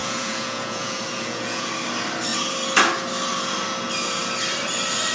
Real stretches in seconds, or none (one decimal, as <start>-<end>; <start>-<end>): 1.7-5.1